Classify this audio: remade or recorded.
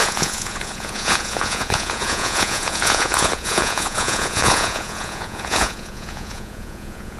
remade